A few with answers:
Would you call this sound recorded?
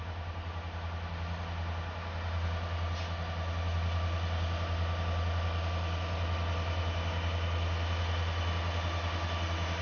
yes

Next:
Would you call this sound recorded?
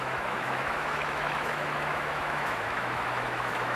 no